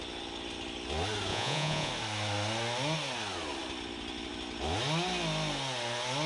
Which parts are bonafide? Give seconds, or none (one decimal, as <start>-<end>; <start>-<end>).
0.0-1.3; 1.9-6.3